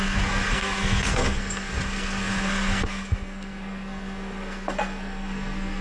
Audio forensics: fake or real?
fake